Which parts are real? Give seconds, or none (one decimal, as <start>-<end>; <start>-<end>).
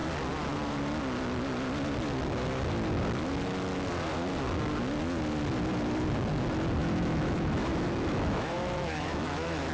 0.0-6.8